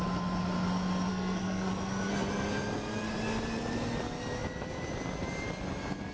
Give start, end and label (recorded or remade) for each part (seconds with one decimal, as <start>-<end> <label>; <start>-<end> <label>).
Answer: 0.0-1.1 recorded; 1.1-1.7 remade; 1.7-6.1 recorded